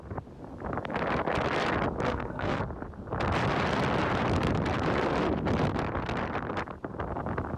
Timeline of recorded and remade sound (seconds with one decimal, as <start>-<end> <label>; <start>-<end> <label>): 0.0-2.1 recorded; 2.1-2.6 remade; 2.6-7.6 recorded